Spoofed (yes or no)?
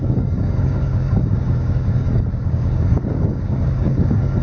yes